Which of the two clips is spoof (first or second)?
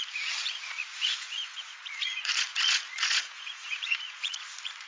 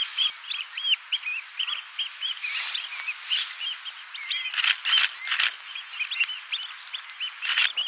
first